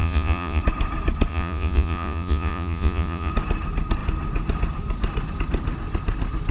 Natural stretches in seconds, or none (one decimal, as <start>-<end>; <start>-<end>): 0.6-1.3; 3.3-6.5